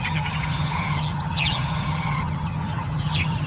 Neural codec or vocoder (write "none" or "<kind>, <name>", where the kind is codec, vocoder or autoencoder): vocoder, HiFi-GAN